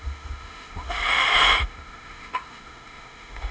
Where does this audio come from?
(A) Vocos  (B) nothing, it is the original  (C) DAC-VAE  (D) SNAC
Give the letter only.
C